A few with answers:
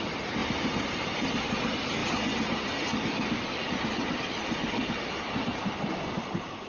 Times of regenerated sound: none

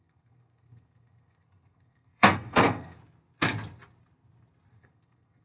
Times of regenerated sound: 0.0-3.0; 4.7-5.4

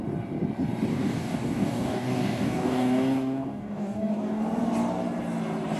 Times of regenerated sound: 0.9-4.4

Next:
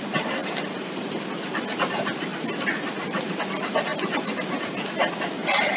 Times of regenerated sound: 3.9-4.4